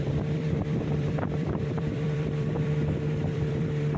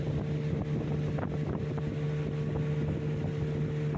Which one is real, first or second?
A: second